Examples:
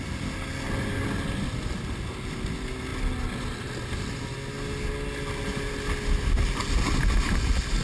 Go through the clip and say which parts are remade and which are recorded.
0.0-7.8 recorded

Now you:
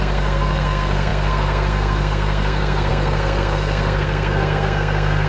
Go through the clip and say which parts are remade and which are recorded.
0.0-5.3 remade

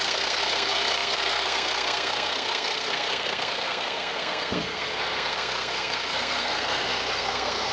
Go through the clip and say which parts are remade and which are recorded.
0.0-7.7 remade

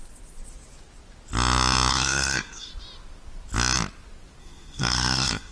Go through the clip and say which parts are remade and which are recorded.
0.0-1.9 recorded; 1.9-2.7 remade; 2.7-4.4 recorded; 4.4-5.5 remade

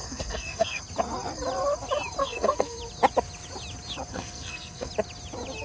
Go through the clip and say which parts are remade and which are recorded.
0.0-0.8 remade; 0.8-2.2 recorded; 2.2-2.8 remade; 2.8-4.1 recorded; 4.1-4.9 remade; 4.9-5.6 recorded

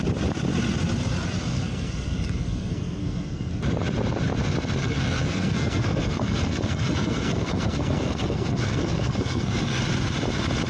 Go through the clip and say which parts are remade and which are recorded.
0.0-1.4 recorded; 1.4-3.5 remade; 3.5-4.8 recorded; 4.8-9.8 remade; 9.8-10.7 recorded

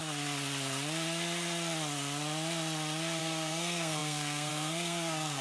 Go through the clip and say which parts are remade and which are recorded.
0.0-3.2 recorded; 3.2-5.4 remade